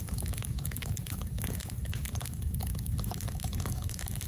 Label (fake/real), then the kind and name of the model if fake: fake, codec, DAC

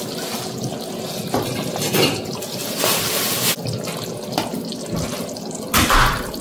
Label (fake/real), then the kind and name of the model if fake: real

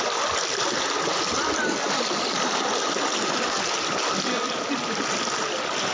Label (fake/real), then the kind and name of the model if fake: real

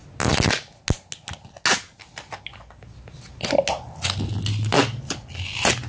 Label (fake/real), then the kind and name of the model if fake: real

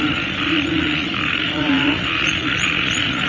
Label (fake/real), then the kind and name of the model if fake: fake, vocoder, Vocos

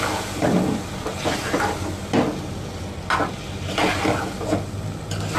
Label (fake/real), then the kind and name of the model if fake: real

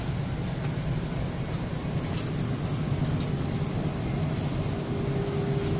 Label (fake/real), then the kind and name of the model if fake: real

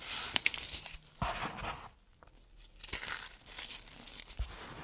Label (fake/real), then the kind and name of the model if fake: real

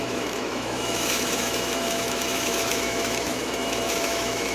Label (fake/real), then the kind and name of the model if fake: fake, autoencoder, DAC-VAE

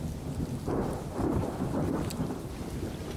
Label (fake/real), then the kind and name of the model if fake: fake, vocoder, BigVGAN v2